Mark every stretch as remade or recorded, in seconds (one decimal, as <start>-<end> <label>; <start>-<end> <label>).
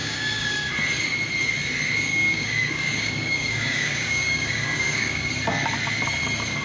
0.0-0.7 remade; 0.7-2.1 recorded; 2.1-5.3 remade; 5.3-6.6 recorded